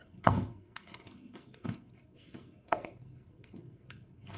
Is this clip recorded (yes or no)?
no